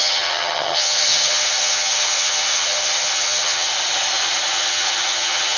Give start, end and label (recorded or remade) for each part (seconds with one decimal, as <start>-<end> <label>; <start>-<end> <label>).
0.0-3.7 remade; 3.7-4.5 recorded; 4.5-5.6 remade